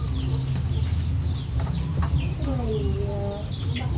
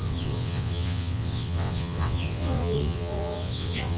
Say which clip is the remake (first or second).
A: second